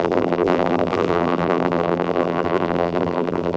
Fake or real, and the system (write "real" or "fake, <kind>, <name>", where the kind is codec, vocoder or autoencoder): fake, vocoder, BigVGAN v2